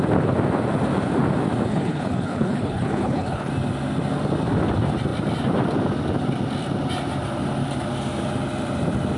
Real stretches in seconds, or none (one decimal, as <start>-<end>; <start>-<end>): 0.0-1.7; 3.5-9.2

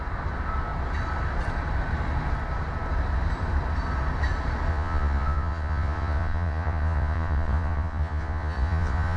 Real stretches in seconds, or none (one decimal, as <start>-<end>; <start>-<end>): 0.0-4.7

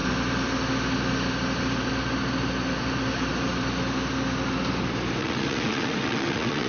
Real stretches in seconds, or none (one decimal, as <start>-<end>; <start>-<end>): 0.0-5.2

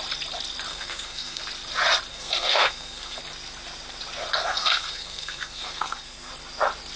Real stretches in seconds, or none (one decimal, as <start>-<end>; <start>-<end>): 0.0-0.7; 1.4-2.1; 3.2-4.4; 6.3-7.0

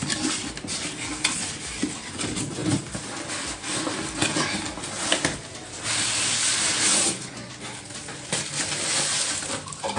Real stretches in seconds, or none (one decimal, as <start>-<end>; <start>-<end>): 0.0-6.9; 7.5-10.0

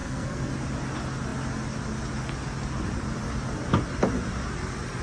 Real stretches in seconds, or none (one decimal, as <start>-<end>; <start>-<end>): 0.5-5.0